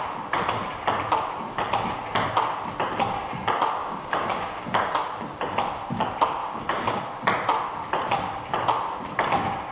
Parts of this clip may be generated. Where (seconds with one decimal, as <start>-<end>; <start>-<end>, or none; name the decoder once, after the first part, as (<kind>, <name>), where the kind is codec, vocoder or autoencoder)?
3.8-5.0 (codec, DAC); 6.4-7.0